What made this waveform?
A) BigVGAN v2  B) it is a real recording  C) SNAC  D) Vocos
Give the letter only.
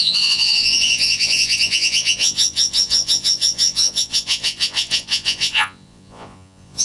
D